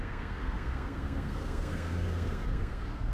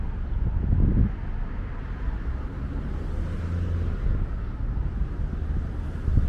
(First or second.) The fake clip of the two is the first